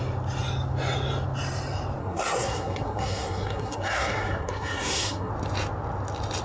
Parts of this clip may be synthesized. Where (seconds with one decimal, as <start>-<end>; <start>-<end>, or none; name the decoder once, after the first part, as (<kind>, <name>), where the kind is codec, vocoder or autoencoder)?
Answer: 2.0-5.3 (codec, SNAC)